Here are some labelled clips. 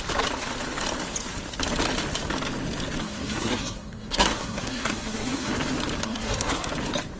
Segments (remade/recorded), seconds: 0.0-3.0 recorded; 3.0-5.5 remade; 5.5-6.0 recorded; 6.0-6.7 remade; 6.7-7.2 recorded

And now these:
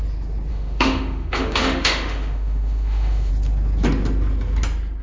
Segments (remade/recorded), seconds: 0.0-0.5 recorded; 0.5-3.3 remade; 3.3-5.0 recorded